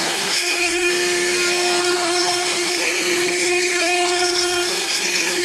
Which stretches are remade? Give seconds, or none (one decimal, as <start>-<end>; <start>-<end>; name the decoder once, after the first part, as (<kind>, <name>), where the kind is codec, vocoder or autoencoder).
0.0-0.9 (codec, SNAC); 1.8-5.4